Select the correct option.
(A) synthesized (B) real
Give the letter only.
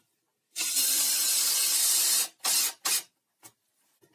B